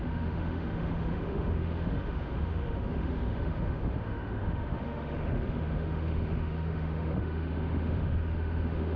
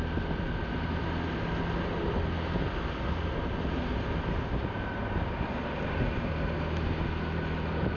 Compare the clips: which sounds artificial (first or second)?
first